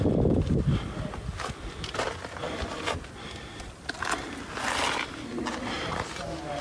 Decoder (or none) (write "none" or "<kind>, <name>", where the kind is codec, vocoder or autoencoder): none